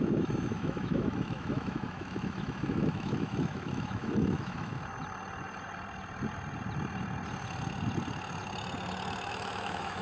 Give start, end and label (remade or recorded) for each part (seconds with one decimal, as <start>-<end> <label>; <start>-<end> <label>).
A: 0.0-4.7 remade; 4.7-9.3 recorded; 9.3-10.0 remade